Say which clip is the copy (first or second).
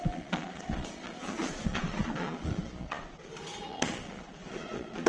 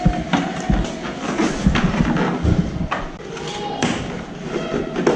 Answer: first